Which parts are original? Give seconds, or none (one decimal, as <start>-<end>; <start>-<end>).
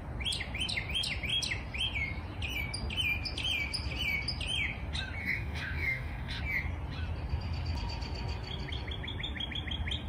0.0-5.2; 6.4-10.1